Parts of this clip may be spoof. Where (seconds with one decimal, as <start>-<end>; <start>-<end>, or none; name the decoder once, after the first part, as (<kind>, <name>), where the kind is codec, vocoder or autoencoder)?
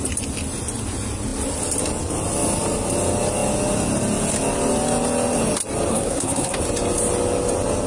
5.9-6.6 (codec, SNAC)